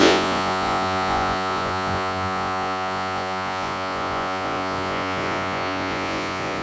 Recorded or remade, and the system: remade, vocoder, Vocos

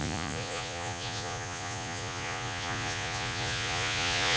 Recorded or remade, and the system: remade, vocoder, Vocos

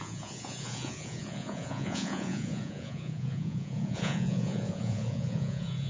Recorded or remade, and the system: remade, vocoder, Vocos